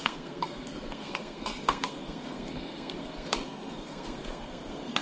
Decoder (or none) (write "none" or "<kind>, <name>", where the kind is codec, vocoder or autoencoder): codec, SNAC